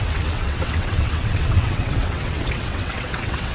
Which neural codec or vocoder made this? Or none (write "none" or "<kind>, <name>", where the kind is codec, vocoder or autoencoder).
vocoder, WaveNeXt